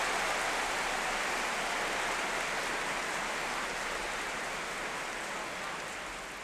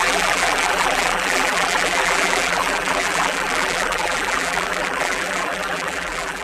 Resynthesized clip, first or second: second